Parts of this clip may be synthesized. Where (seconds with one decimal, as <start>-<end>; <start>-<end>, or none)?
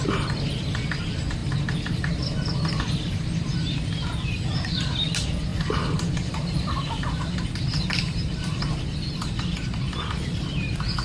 none